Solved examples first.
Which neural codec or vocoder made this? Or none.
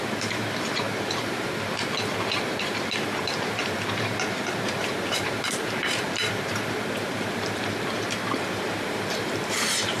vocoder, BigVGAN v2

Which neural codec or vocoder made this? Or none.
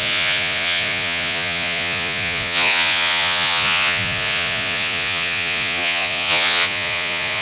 vocoder, Vocos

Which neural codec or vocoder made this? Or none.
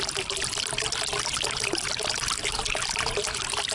none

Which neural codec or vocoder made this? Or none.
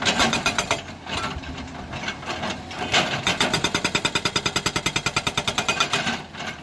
none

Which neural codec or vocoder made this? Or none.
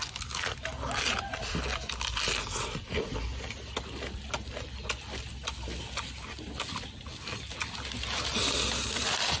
none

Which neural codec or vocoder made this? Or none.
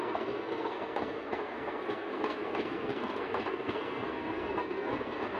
codec, SNAC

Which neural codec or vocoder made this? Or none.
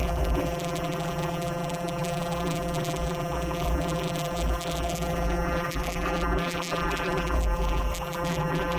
vocoder, BigVGAN v2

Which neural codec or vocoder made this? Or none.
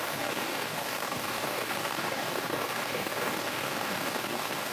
codec, DAC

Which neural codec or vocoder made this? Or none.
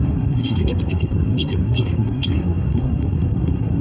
codec, SNAC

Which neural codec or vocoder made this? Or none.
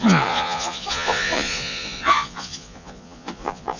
vocoder, Vocos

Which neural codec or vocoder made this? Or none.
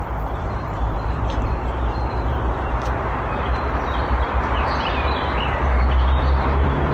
vocoder, BigVGAN v2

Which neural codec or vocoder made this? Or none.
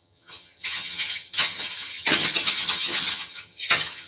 vocoder, HiFi-GAN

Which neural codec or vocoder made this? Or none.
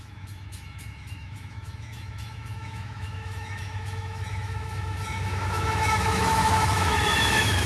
autoencoder, DAC-VAE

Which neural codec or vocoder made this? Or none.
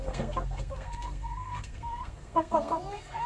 codec, SNAC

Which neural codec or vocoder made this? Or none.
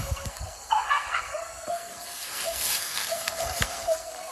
codec, SNAC